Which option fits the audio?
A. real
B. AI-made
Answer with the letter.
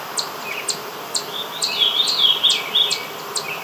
A